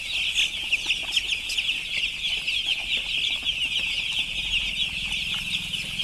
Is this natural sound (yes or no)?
yes